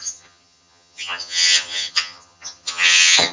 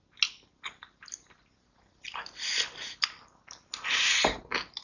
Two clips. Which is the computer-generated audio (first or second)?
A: first